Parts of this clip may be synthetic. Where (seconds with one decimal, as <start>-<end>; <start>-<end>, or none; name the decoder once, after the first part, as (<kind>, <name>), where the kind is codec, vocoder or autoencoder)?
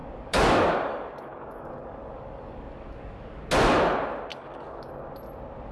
0.0-3.4 (codec, DAC); 4.3-4.9